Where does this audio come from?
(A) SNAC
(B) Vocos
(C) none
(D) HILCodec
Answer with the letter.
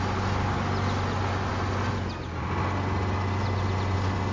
C